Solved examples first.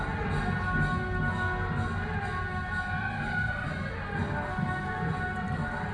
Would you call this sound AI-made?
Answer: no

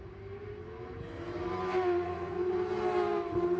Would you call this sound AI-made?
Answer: no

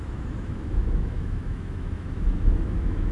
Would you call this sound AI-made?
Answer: yes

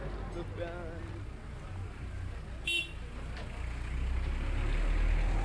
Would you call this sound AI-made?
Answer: no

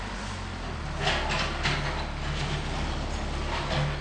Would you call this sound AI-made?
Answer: no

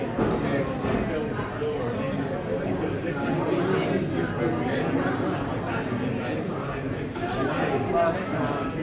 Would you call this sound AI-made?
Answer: no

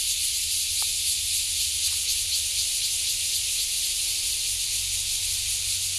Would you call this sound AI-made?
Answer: no